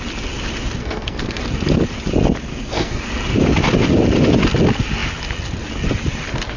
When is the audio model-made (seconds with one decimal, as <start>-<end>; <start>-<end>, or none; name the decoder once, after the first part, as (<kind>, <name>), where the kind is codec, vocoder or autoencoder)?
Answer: 0.8-1.4 (codec, SNAC); 2.5-3.1